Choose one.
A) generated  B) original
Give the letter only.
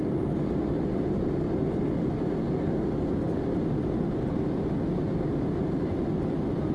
B